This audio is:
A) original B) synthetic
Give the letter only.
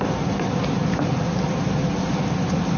A